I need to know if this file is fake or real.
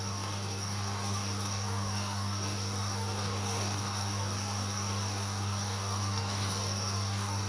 fake